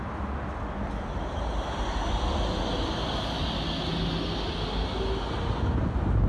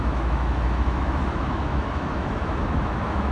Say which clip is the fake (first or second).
second